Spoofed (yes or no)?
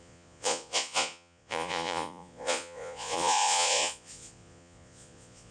yes